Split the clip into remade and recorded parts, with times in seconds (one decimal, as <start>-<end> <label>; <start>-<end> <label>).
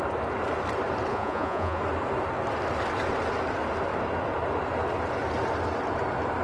0.0-1.1 recorded; 1.1-1.8 remade; 1.8-6.4 recorded